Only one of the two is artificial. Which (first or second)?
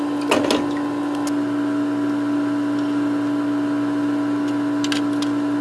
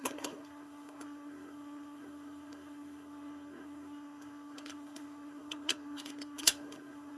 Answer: second